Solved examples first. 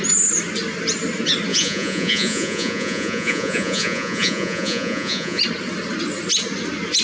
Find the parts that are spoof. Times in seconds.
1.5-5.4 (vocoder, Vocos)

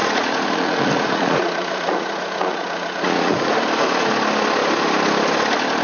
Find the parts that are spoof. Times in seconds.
0.0-3.5 (vocoder, Vocos)

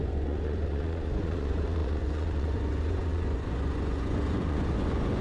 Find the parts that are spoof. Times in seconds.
0.0-5.2 (vocoder, Vocos)